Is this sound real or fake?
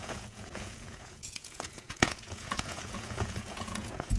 fake